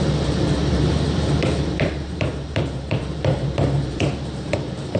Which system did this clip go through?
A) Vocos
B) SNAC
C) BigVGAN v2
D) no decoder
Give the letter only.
C